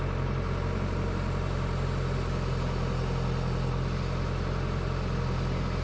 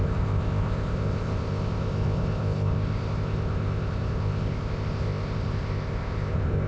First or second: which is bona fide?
first